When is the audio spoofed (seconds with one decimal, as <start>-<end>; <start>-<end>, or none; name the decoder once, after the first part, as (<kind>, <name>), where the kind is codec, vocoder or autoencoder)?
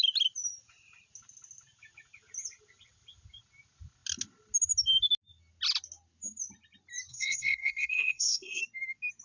7.1-8.6 (codec, SNAC)